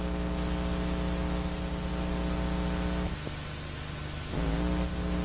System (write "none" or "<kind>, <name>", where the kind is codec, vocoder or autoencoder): none